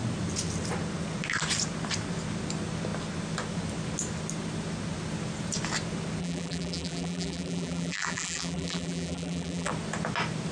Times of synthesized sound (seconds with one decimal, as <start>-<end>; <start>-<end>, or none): 6.2-9.7